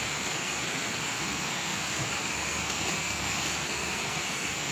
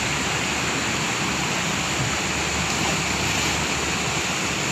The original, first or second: second